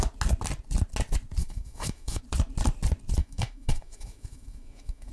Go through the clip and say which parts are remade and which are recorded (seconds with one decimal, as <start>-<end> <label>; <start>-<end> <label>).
0.0-1.4 recorded; 1.4-2.2 remade; 2.2-3.2 recorded; 3.2-5.1 remade